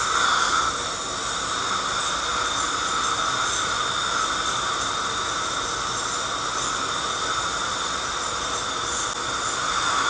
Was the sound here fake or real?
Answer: real